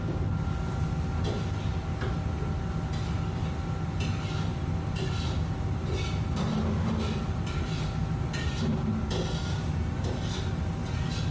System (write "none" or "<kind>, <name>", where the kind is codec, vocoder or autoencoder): none